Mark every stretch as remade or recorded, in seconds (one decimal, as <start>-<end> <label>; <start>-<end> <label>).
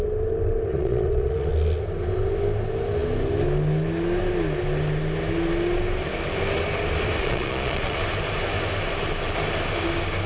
0.0-0.7 recorded; 0.7-1.5 remade; 1.5-7.2 recorded; 7.2-8.0 remade; 8.0-10.3 recorded